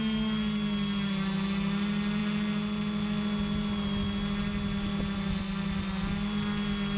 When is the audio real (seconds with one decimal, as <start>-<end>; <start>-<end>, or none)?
0.0-7.0